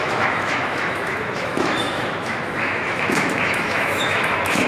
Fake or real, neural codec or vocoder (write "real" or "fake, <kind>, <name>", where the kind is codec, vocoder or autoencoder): fake, autoencoder, DAC-VAE